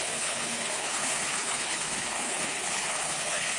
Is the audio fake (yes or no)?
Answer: yes